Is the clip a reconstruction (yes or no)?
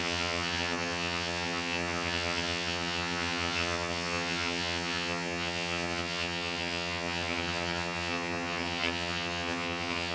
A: yes